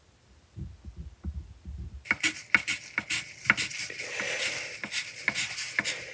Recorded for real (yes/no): yes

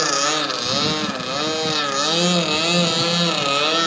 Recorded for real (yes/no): yes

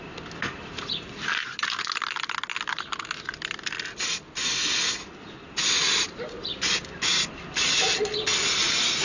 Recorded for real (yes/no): yes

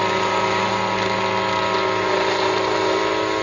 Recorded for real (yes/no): yes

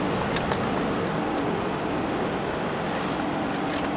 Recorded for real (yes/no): yes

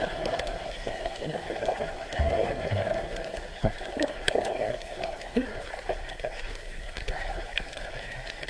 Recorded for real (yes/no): no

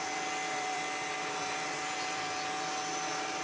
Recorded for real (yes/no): no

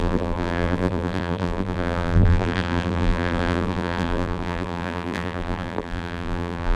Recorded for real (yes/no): no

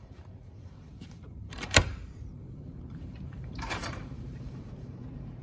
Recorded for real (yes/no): no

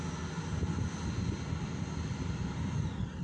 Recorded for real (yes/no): yes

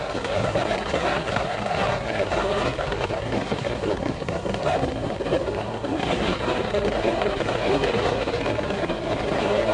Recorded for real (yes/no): no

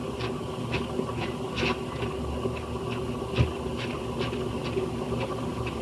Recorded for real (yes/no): yes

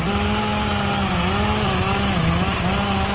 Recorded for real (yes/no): yes